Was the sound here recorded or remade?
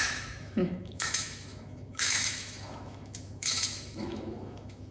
remade